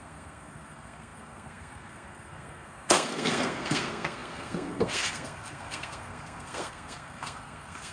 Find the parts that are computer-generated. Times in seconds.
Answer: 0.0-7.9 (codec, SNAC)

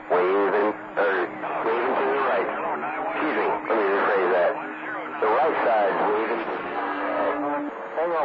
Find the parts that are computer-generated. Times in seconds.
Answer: 6.6-7.4 (codec, SNAC)

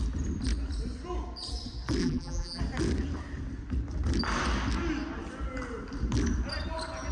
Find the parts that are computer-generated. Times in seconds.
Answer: 2.0-2.6 (vocoder, BigVGAN v2)

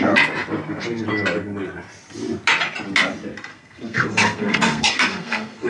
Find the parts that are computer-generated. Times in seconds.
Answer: 3.5-5.7 (codec, SNAC)

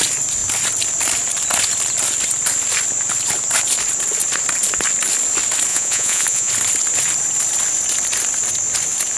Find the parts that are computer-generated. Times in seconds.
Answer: 5.7-6.5 (vocoder, Vocos)

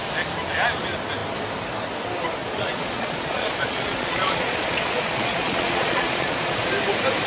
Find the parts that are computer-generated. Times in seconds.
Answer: 2.4-6.7 (vocoder, Vocos)

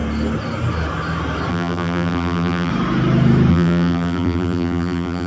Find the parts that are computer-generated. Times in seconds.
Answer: 1.5-2.7 (vocoder, BigVGAN v2); 3.5-5.3